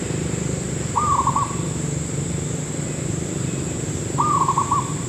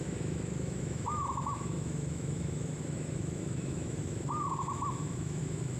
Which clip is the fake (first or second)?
second